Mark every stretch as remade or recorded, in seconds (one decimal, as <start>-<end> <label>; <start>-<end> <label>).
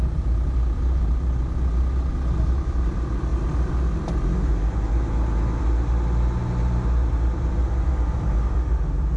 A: 0.0-9.2 recorded